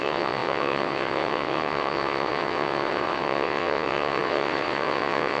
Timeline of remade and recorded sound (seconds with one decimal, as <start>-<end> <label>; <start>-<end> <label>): 0.0-5.4 remade